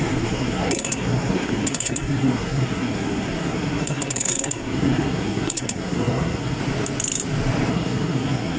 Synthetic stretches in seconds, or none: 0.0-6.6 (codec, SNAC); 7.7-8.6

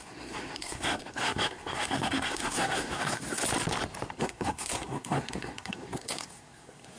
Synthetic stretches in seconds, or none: 0.0-3.4 (codec, SNAC); 4.2-7.0

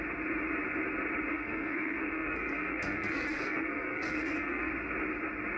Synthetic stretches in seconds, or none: 1.3-4.7 (codec, SNAC)